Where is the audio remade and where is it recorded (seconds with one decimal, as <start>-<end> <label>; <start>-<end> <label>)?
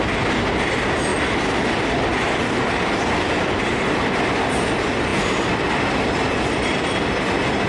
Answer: 0.0-7.7 recorded